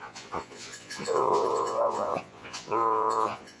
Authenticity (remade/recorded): remade